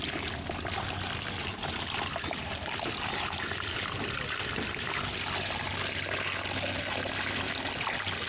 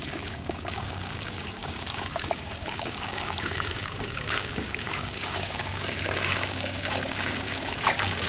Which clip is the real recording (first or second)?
first